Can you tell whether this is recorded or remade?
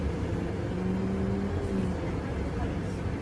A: recorded